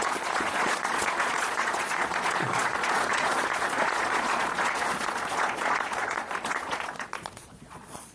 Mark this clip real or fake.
fake